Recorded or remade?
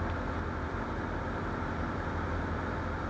recorded